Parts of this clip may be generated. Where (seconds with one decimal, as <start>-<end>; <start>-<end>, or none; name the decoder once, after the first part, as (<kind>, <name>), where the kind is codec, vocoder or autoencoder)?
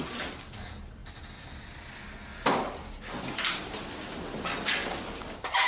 1.0-2.0 (vocoder, BigVGAN v2); 4.8-5.7